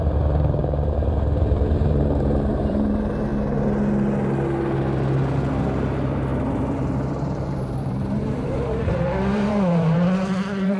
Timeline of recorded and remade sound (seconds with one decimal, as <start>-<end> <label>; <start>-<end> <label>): 0.0-3.3 remade; 3.3-5.5 recorded; 5.5-10.8 remade

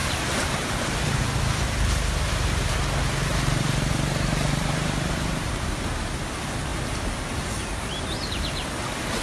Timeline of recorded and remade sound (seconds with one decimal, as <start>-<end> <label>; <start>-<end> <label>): 0.0-2.7 remade; 2.7-3.3 recorded; 3.3-5.5 remade; 5.5-9.2 recorded

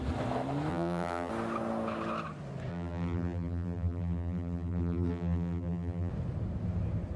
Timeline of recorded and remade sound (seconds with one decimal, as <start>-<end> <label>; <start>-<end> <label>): 0.0-0.7 recorded; 0.7-1.3 remade; 1.3-2.7 recorded; 2.7-6.1 remade; 6.1-7.2 recorded